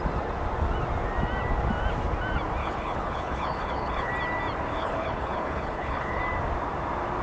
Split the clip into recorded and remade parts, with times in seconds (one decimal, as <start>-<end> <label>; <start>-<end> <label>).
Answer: 0.0-2.6 recorded; 2.6-4.1 remade; 4.1-4.7 recorded; 4.7-6.2 remade; 6.2-7.2 recorded